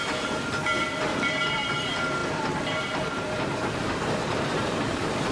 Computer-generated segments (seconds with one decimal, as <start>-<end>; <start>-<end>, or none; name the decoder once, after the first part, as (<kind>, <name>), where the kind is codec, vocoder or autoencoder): 0.7-5.3 (vocoder, BigVGAN v2)